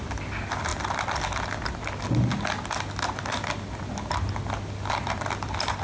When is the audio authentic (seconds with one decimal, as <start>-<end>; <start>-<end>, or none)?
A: 0.0-5.8